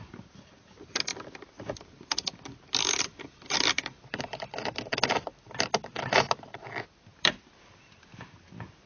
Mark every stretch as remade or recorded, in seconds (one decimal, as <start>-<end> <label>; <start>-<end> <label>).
0.0-8.9 recorded